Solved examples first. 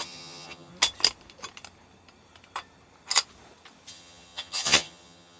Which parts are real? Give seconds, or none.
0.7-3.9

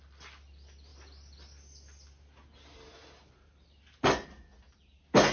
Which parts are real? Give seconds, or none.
0.0-5.3